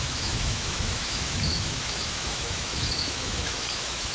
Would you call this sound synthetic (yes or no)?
yes